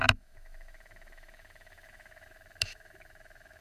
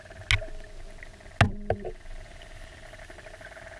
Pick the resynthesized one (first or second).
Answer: first